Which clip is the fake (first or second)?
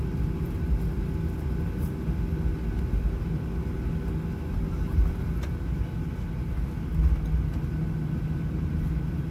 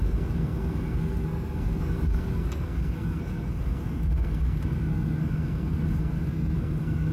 second